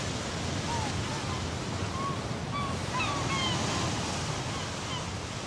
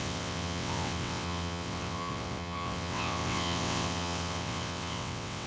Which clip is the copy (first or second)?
second